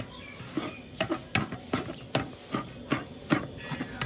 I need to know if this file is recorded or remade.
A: recorded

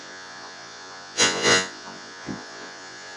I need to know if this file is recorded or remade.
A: remade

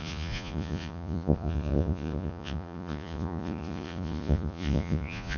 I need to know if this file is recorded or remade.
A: remade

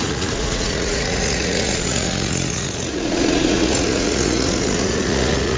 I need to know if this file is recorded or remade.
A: remade